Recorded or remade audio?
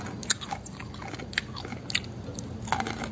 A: recorded